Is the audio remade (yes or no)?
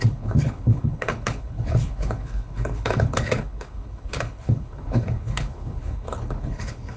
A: yes